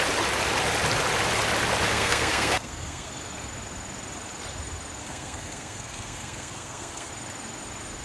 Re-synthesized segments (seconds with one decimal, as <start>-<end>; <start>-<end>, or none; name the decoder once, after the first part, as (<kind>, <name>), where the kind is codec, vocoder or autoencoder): 1.9-3.1 (codec, SNAC); 5.0-7.1